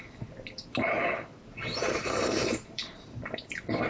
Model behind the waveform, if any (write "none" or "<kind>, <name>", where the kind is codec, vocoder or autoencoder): vocoder, BigVGAN v2